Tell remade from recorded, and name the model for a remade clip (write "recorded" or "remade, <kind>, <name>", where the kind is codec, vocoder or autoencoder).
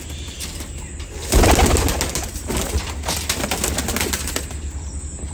recorded